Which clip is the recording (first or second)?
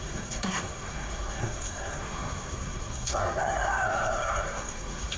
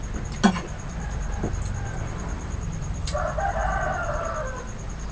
second